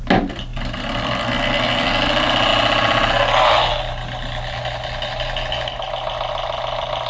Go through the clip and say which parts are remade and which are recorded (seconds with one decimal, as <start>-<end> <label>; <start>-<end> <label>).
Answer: 0.0-7.1 recorded